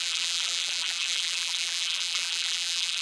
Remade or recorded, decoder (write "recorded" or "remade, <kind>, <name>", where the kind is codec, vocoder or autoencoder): remade, vocoder, BigVGAN v2